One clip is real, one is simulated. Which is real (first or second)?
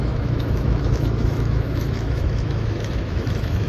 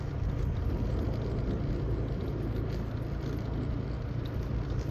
second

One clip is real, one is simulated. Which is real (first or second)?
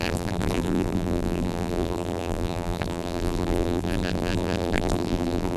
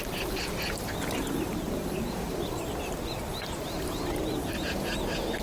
second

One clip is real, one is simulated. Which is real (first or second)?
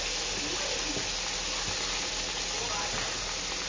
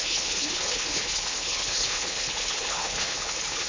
first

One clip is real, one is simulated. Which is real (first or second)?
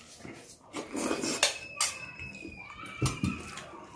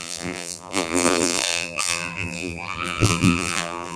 first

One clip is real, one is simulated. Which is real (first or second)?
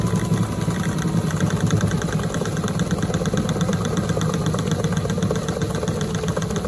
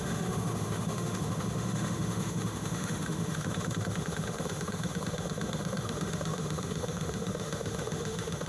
first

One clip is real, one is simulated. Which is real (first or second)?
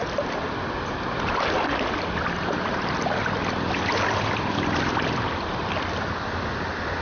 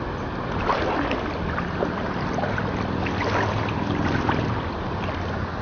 second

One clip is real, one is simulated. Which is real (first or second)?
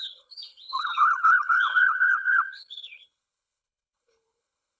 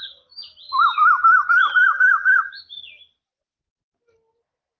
second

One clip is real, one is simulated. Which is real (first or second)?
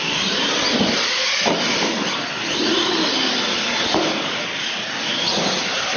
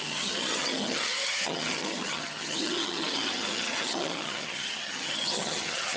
first